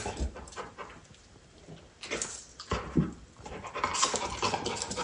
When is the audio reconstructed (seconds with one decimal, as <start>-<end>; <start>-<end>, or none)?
none